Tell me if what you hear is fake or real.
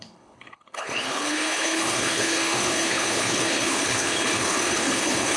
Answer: fake